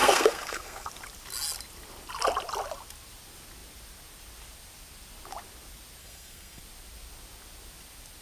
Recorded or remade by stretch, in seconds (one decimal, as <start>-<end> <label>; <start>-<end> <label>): 0.0-0.9 remade; 0.9-6.0 recorded; 6.0-6.6 remade; 6.6-8.2 recorded